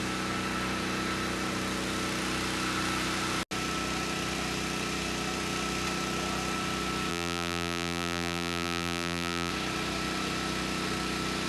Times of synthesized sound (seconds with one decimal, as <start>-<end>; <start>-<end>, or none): 7.1-9.5

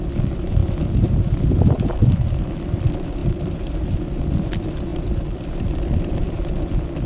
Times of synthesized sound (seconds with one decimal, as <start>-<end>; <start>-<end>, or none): 0.0-0.6; 2.1-7.1

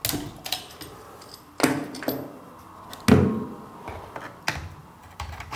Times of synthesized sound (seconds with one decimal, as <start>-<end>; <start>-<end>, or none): 4.8-5.6